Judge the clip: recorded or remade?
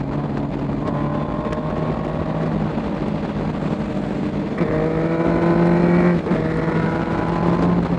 recorded